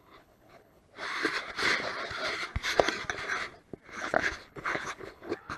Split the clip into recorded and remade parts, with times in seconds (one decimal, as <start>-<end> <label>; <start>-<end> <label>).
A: 0.0-0.8 remade; 0.8-3.9 recorded; 3.9-5.6 remade